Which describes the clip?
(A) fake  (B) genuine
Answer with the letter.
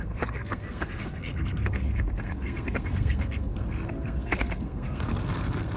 A